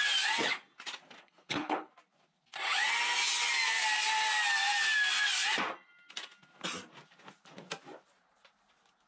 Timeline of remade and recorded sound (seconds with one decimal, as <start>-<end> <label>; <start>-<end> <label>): 0.0-1.2 recorded; 1.2-1.9 remade; 1.9-9.1 recorded